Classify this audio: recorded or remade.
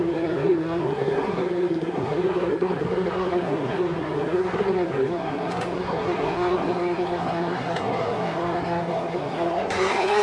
remade